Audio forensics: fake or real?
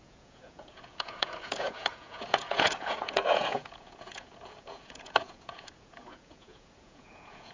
fake